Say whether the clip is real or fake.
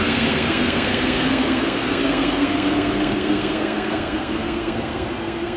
fake